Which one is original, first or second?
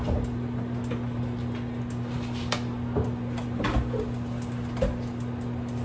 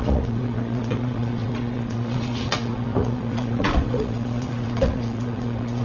first